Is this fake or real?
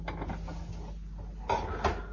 real